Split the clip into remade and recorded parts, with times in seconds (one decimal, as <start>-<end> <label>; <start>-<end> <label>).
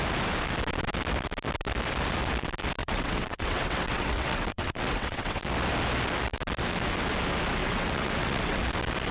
0.0-2.8 recorded; 2.8-5.4 remade; 5.4-7.6 recorded; 7.6-8.6 remade; 8.6-9.1 recorded